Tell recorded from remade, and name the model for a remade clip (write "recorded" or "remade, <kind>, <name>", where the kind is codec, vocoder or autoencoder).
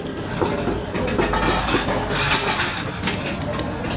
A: recorded